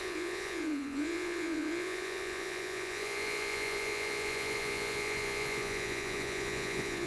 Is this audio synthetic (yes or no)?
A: yes